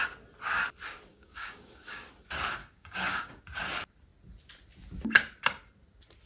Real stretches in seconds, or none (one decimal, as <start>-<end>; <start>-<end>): 0.0-1.1; 2.1-2.6; 3.4-6.3